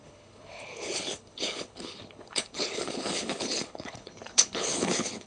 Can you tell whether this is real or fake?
fake